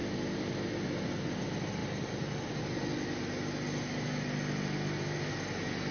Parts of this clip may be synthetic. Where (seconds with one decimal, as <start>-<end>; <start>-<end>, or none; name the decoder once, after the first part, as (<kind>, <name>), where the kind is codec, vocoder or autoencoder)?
none